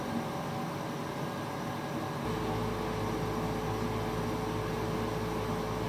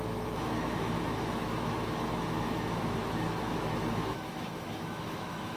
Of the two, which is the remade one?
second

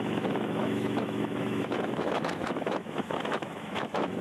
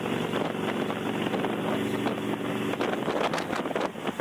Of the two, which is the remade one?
first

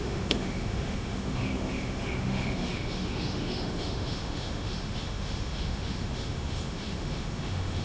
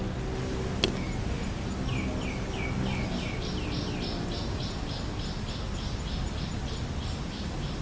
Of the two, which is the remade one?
first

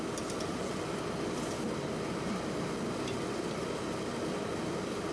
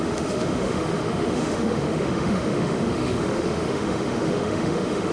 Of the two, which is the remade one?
second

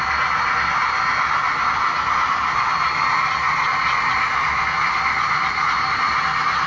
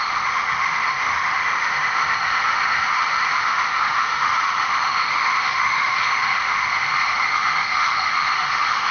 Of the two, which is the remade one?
second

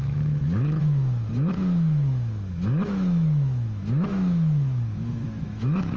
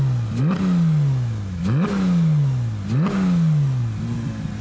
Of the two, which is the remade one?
first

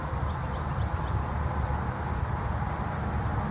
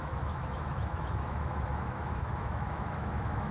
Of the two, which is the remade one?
second